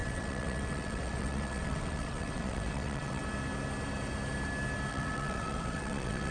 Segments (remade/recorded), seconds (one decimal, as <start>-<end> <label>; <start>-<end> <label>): 0.0-3.2 remade; 3.2-4.9 recorded; 4.9-6.3 remade